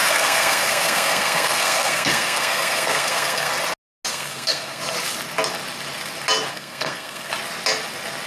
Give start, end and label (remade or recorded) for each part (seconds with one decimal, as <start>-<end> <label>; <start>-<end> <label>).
0.0-3.5 remade; 3.5-4.1 recorded; 4.1-4.8 remade; 4.8-6.5 recorded; 6.5-7.3 remade; 7.3-8.3 recorded